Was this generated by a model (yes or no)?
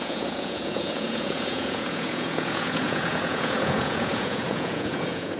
yes